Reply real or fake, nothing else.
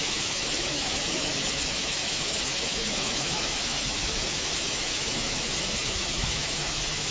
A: fake